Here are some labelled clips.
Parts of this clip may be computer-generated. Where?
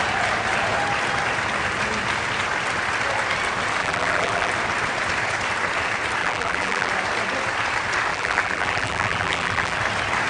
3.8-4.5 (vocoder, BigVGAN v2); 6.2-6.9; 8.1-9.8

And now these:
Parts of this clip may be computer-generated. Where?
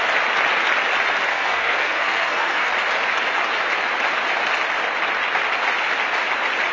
1.3-2.7 (codec, SNAC)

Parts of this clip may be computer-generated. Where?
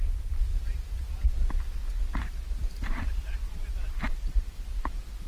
2.6-3.3 (vocoder, BigVGAN v2); 4.1-4.6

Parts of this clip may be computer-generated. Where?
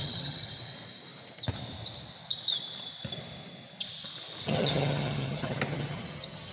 0.0-0.6 (vocoder, HiFi-GAN); 4.4-6.5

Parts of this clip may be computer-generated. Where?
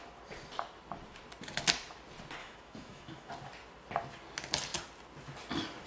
2.4-3.3 (autoencoder, DAC-VAE)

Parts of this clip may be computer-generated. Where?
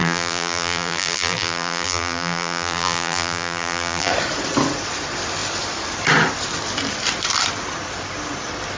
0.0-4.1 (vocoder, BigVGAN v2)